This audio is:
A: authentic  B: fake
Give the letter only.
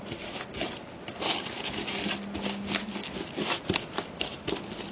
A